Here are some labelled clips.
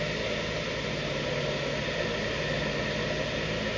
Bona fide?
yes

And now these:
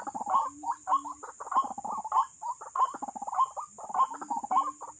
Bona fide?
yes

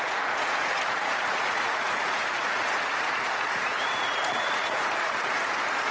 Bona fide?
no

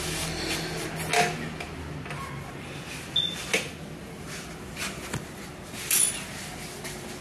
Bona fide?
yes